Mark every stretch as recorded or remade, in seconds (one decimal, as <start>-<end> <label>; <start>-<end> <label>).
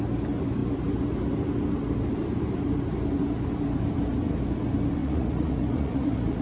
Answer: 0.0-5.0 recorded; 5.0-6.4 remade